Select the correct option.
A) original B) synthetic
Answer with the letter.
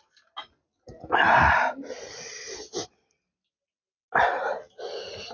A